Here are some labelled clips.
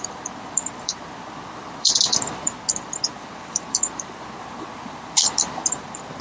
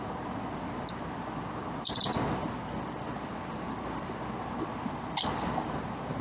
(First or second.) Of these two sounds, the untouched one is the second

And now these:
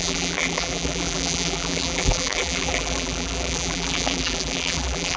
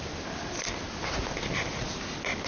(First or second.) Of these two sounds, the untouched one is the second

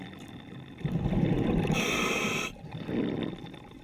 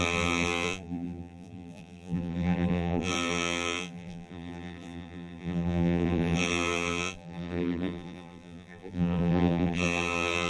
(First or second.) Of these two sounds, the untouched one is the first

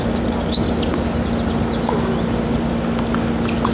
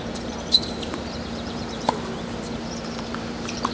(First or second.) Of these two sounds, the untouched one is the first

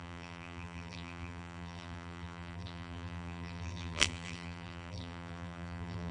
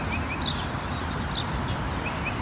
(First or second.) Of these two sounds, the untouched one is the second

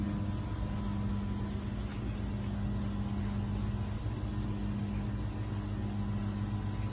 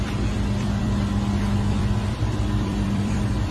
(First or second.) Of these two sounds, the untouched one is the first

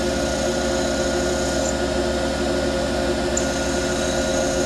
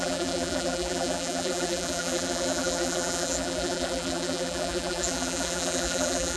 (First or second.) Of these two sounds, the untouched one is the first